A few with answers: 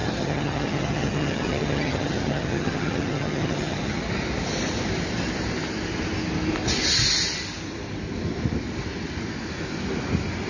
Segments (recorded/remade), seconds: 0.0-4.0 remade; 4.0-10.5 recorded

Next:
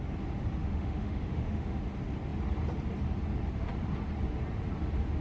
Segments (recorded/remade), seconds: 0.0-0.6 recorded; 0.6-1.8 remade; 1.8-5.2 recorded